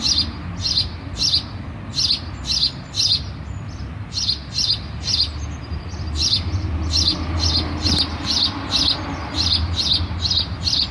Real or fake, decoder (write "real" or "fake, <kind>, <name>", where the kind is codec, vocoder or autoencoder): real